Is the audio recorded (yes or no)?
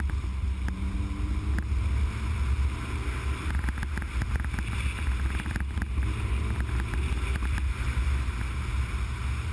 yes